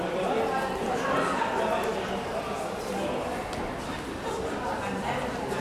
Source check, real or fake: real